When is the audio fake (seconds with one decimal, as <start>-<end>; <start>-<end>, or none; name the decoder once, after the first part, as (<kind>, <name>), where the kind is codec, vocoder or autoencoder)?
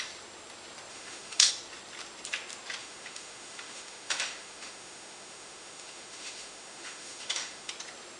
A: 0.9-1.5 (autoencoder, DAC-VAE); 2.8-7.7